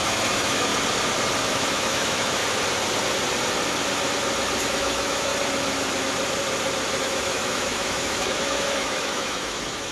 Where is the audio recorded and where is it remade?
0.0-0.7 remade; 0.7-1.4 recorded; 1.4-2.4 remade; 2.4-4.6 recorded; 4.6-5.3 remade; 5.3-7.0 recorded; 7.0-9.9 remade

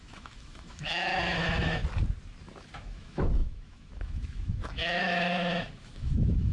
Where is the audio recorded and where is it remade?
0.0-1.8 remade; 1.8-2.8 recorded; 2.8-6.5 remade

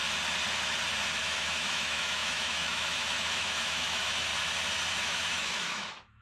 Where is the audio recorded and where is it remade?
0.0-1.2 recorded; 1.2-4.3 remade; 4.3-4.9 recorded; 4.9-6.2 remade